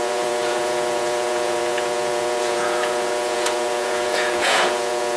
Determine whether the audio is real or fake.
fake